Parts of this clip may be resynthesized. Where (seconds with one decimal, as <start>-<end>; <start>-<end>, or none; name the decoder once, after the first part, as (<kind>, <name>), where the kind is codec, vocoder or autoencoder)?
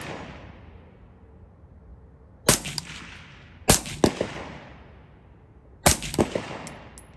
none